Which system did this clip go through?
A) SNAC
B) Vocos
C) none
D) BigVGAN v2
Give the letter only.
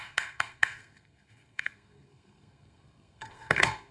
A